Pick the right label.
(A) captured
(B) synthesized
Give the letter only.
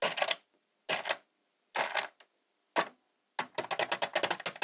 A